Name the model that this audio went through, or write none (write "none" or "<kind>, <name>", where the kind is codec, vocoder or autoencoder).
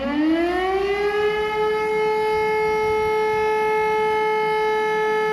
none